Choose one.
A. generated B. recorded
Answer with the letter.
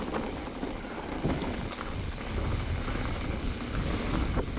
B